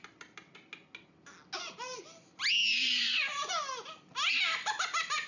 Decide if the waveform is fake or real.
real